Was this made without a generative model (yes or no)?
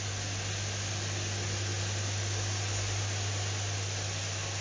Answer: yes